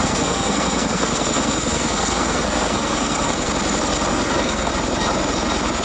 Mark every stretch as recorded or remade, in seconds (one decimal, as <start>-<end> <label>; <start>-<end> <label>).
0.0-3.5 remade; 3.5-4.1 recorded; 4.1-4.7 remade; 4.7-5.8 recorded